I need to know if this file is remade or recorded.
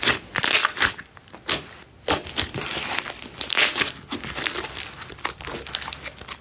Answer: recorded